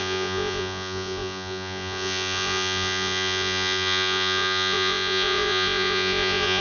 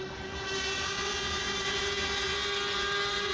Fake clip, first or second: first